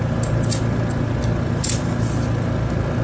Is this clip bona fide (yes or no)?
yes